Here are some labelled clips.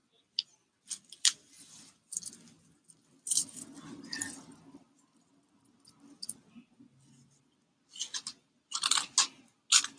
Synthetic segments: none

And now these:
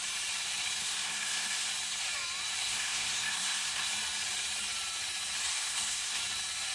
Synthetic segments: 0.8-1.7 (codec, SNAC); 2.6-3.9; 5.5-6.2

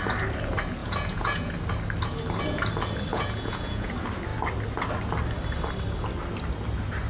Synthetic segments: 0.8-1.5 (vocoder, Vocos); 3.1-3.9

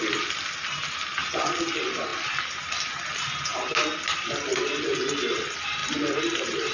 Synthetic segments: 2.1-2.7 (vocoder, BigVGAN v2); 5.8-6.7

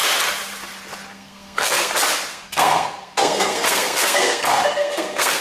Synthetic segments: 1.1-1.9 (codec, SNAC); 2.3-5.4

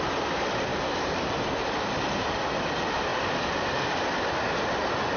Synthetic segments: 0.7-2.3 (vocoder, BigVGAN v2); 3.1-4.0